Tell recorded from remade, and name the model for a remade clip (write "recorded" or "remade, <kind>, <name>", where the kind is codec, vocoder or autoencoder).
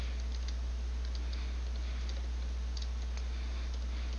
recorded